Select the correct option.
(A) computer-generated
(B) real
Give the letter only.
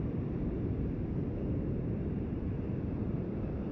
B